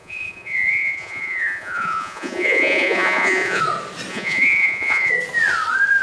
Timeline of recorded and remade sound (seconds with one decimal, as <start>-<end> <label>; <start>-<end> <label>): 0.0-3.6 remade; 3.6-4.1 recorded; 4.1-5.1 remade; 5.1-6.0 recorded